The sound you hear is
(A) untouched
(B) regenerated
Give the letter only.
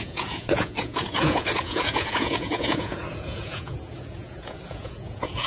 B